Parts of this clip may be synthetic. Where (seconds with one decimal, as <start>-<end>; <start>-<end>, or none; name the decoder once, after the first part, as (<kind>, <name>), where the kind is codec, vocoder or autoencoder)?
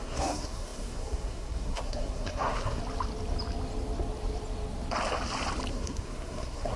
0.0-2.8 (codec, SNAC); 5.7-6.8